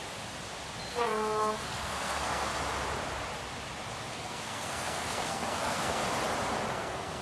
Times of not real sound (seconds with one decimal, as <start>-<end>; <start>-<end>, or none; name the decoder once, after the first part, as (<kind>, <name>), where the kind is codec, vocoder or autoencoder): 0.9-2.5 (codec, SNAC); 4.1-6.0; 6.7-7.2

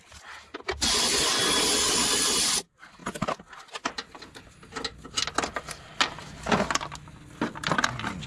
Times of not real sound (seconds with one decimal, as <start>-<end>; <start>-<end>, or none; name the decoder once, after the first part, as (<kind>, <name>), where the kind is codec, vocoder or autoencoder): none

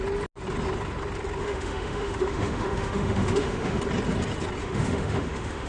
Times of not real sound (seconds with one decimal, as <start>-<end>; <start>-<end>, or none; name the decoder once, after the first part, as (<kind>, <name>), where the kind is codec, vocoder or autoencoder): 1.4-3.8 (autoencoder, DAC-VAE); 4.6-5.7